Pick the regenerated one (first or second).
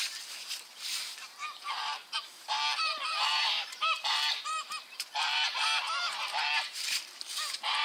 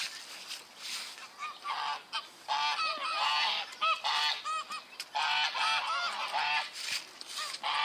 first